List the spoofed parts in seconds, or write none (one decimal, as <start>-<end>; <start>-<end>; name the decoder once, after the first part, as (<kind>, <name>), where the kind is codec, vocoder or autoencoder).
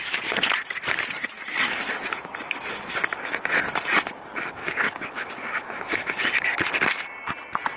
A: 4.6-5.5 (codec, DAC)